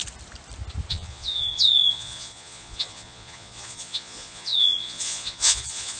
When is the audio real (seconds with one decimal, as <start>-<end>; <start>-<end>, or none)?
0.0-0.9